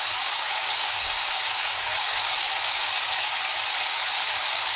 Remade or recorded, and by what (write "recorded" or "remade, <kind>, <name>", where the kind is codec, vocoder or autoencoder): remade, codec, DAC